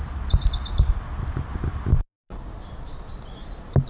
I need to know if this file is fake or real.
real